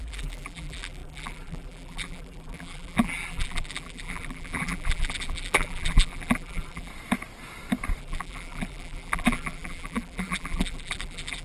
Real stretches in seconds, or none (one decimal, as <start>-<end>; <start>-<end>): 6.9-8.0